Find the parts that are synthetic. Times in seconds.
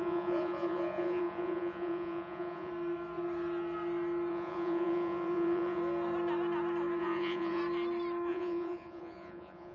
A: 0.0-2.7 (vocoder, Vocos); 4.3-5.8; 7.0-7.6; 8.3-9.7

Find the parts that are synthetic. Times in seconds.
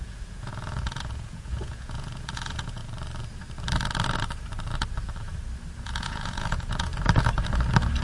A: 0.0-2.8 (vocoder, Vocos); 5.8-6.9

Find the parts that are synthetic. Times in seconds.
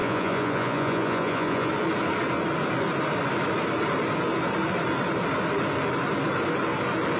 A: 0.0-1.7 (vocoder, Vocos)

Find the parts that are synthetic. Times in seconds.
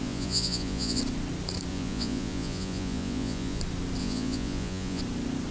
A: 0.0-1.0 (vocoder, Vocos); 1.7-3.6; 4.0-5.0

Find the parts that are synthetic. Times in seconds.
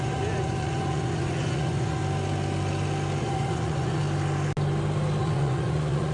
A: 0.0-2.0 (vocoder, Vocos); 3.2-4.0; 5.2-6.1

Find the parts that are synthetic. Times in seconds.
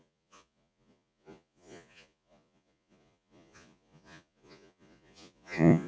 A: 0.0-5.9 (vocoder, Vocos)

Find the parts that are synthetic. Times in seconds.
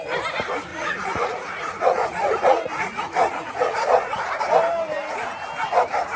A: 0.7-4.4 (vocoder, Vocos)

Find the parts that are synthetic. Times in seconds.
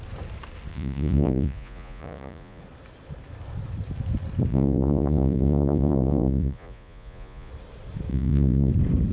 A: 0.7-2.6 (vocoder, Vocos); 4.5-7.5; 8.1-8.7